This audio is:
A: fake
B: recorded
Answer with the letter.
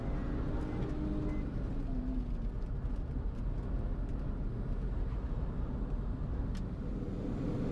B